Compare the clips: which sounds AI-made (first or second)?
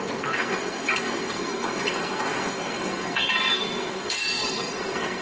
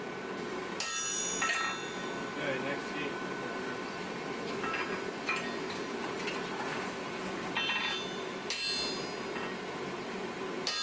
first